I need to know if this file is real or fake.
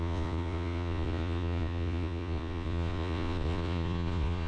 fake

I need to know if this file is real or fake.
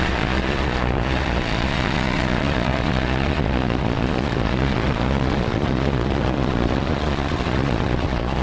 fake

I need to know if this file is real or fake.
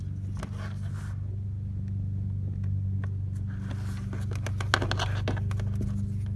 real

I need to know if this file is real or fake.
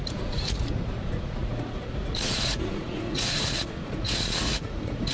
fake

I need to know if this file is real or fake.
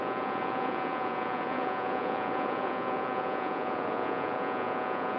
fake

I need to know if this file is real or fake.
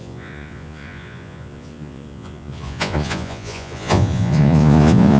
fake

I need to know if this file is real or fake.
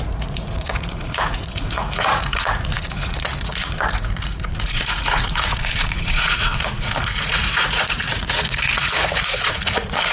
fake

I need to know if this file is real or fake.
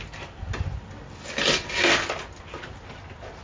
real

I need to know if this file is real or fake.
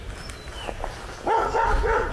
real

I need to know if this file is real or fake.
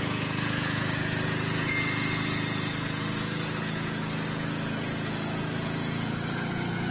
fake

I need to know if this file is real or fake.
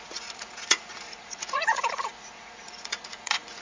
fake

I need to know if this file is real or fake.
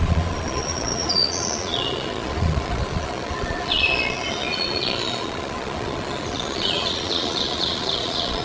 fake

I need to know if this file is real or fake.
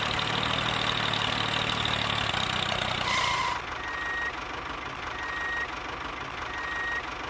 real